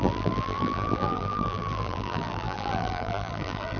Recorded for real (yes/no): no